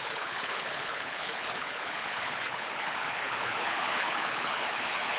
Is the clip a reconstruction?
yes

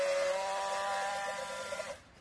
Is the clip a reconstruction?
yes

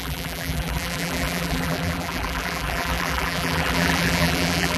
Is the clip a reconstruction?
yes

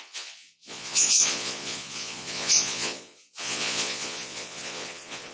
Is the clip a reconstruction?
yes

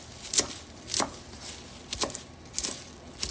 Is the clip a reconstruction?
no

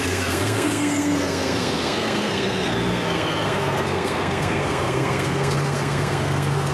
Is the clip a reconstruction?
yes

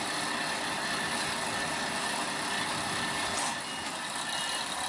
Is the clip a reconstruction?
no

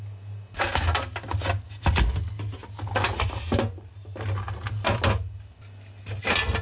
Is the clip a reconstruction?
no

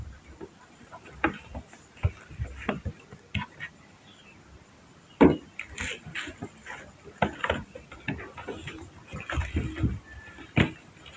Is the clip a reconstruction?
no